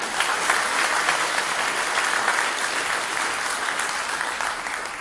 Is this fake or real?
real